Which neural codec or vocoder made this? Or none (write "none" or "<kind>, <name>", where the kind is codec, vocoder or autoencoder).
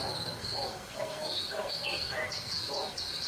codec, SNAC